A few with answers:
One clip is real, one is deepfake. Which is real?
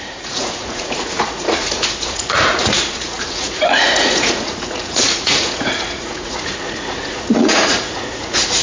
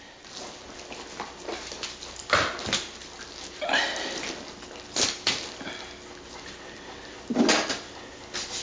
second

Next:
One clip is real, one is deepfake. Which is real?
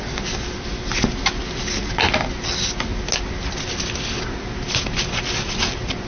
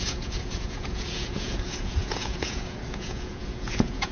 first